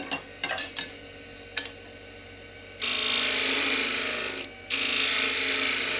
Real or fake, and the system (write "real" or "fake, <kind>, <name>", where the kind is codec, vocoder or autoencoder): real